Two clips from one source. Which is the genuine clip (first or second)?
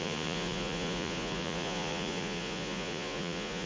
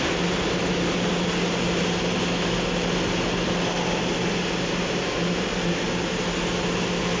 second